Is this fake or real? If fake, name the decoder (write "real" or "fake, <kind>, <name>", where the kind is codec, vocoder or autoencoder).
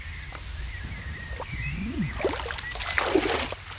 real